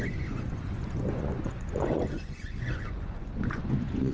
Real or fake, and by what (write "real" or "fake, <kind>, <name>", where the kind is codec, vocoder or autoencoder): fake, vocoder, Vocos